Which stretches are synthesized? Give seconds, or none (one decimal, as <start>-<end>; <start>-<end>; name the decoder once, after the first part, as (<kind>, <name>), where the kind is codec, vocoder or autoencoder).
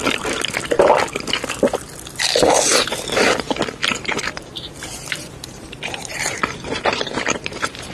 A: 3.8-7.9 (vocoder, BigVGAN v2)